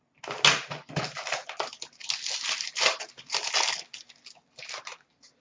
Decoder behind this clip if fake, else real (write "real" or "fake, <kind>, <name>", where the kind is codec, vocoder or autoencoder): real